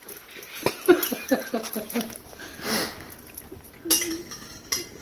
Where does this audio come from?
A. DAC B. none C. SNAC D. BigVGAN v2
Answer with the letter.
B